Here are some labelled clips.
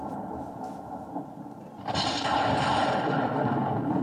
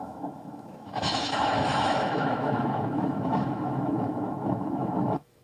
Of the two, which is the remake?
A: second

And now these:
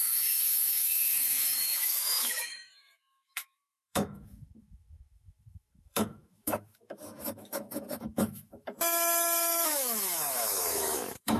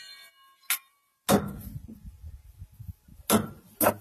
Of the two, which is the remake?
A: first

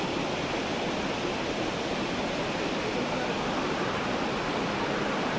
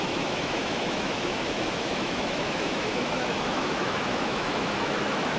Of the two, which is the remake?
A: second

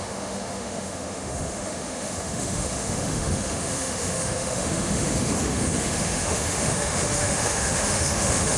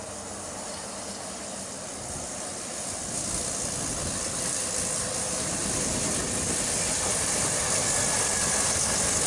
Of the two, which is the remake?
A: first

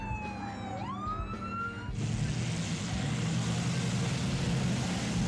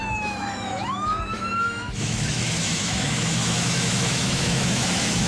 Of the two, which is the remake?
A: second